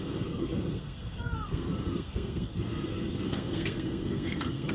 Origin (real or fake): fake